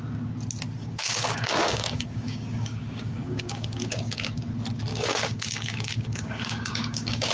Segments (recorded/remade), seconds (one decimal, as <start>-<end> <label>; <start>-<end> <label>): 0.0-0.8 recorded; 0.8-4.5 remade; 4.5-4.9 recorded; 4.9-7.3 remade